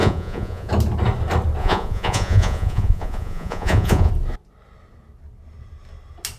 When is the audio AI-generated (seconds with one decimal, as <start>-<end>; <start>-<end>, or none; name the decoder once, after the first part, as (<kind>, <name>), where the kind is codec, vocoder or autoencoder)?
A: 0.0-0.7 (vocoder, Vocos); 1.6-4.1